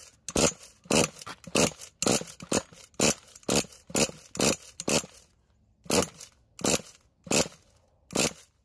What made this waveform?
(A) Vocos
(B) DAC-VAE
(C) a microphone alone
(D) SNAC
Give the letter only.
C